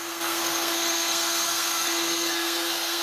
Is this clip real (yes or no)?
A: no